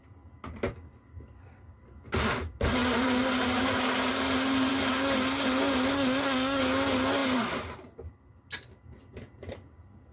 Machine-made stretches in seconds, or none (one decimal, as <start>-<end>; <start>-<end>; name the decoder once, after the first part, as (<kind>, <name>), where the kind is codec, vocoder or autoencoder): 5.9-6.6 (codec, SNAC)